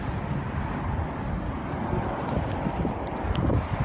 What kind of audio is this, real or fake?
real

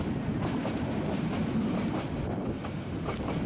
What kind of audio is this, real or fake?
real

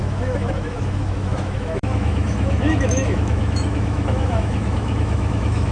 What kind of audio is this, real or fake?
fake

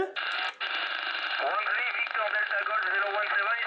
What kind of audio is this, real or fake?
real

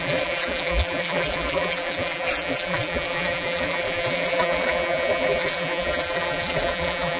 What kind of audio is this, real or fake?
fake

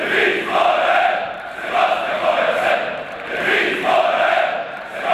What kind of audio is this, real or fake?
fake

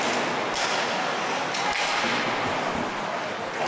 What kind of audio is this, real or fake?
real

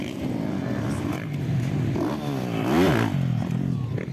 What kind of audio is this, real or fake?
real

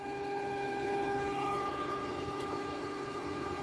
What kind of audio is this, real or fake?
fake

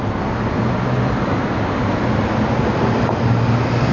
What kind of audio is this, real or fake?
real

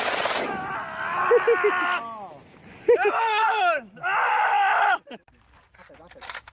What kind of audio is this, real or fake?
real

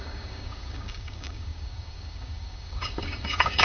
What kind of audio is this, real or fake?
fake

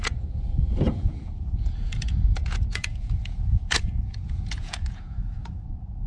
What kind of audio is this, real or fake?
fake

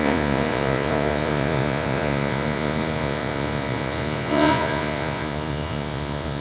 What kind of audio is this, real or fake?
fake